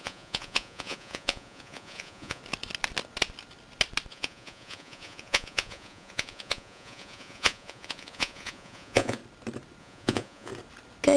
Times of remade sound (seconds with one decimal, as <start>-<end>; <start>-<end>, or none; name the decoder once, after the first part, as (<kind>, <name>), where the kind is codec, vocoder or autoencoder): 0.0-2.4 (vocoder, Vocos); 4.1-9.2; 9.8-10.5